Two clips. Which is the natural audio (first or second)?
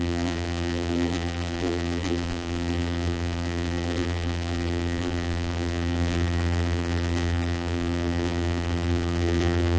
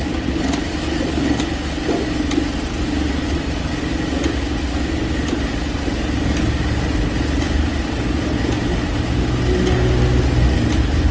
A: second